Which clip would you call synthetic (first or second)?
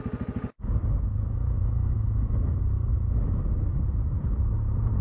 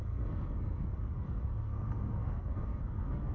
second